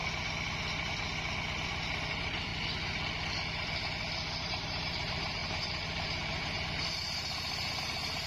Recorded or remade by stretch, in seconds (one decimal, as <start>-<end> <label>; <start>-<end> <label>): 0.0-2.1 recorded; 2.1-2.5 remade; 2.5-4.4 recorded; 4.4-8.3 remade